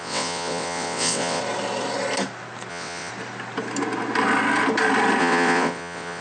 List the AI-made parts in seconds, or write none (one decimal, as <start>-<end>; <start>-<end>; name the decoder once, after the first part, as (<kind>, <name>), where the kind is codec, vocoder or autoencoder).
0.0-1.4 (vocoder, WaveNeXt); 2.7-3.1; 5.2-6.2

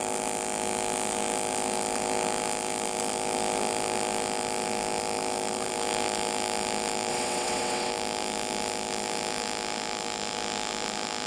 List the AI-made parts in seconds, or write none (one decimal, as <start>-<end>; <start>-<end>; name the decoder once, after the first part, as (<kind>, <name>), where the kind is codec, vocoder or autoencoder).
7.1-7.9 (vocoder, WaveNeXt)

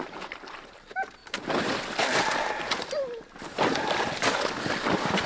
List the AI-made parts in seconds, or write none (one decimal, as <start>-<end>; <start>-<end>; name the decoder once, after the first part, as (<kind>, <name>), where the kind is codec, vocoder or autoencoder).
none

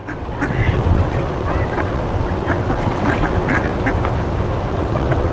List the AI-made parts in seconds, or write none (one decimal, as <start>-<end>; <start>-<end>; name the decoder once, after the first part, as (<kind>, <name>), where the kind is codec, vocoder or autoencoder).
0.0-3.7 (vocoder, WaveNeXt); 4.6-5.3